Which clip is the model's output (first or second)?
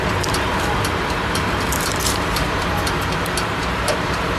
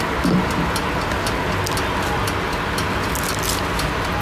first